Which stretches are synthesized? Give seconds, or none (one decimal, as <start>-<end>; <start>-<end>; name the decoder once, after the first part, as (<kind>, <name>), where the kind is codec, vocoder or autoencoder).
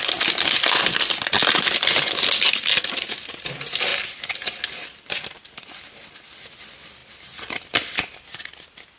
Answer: none